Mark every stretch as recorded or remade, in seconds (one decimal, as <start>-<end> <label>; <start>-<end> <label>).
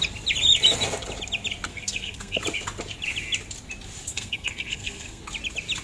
0.0-1.7 recorded; 1.7-2.4 remade; 2.4-4.1 recorded; 4.1-5.2 remade; 5.2-5.8 recorded